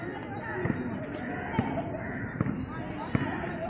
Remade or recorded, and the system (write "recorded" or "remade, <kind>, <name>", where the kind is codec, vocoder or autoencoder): recorded